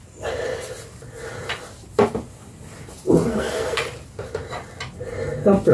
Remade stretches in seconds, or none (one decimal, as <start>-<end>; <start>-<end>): 3.3-3.8